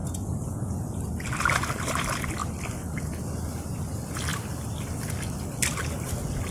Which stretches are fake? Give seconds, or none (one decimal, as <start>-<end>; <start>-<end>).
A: 0.0-1.0